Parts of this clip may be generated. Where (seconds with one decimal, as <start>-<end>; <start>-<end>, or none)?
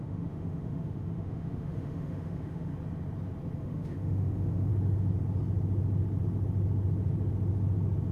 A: 0.0-2.7; 3.6-4.7